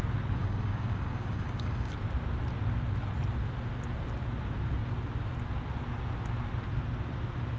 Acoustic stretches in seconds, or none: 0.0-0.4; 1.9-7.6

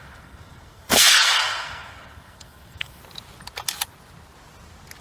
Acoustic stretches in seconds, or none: 3.0-5.0

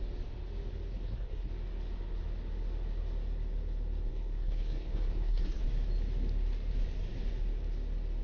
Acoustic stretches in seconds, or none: 0.0-0.9; 1.5-4.1; 5.6-8.2

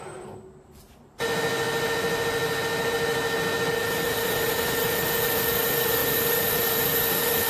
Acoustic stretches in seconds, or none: 0.0-6.0; 6.6-7.5

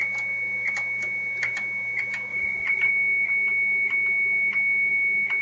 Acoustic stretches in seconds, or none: 0.0-2.3; 2.9-5.4

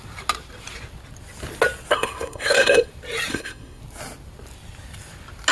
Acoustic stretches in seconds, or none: 0.0-1.9; 2.9-3.3; 3.8-5.5

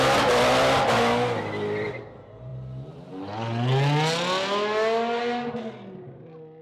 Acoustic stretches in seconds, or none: 0.0-6.6